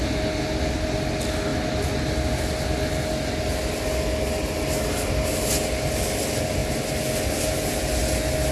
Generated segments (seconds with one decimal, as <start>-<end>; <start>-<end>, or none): none